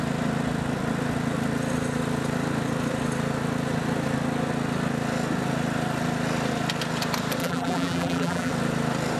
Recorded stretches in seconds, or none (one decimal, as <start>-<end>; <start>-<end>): 0.0-7.4; 8.5-9.2